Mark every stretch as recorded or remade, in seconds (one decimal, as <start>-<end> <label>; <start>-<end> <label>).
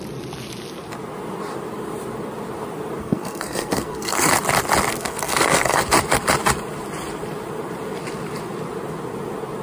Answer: 0.0-3.0 recorded; 3.0-4.3 remade; 4.3-4.9 recorded; 4.9-5.8 remade; 5.8-9.6 recorded